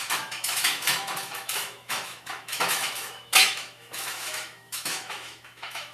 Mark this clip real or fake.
fake